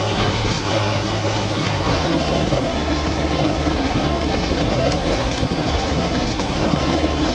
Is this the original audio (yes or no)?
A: no